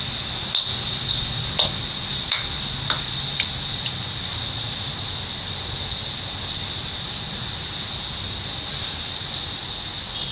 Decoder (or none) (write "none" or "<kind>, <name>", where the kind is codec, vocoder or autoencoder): none